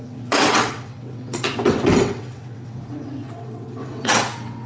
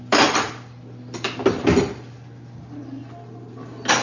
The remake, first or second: first